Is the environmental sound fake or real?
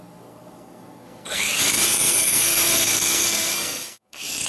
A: fake